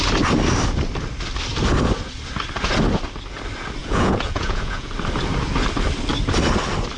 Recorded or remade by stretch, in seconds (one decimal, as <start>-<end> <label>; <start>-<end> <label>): 0.0-3.8 recorded; 3.8-4.9 remade; 4.9-7.0 recorded